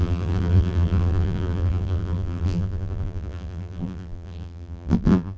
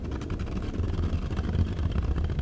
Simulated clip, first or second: first